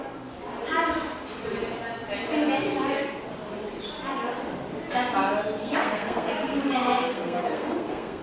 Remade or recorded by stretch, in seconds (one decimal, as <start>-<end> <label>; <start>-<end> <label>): 0.0-5.6 recorded; 5.6-8.2 remade